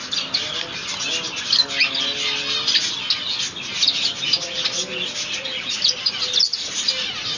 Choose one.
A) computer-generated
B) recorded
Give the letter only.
B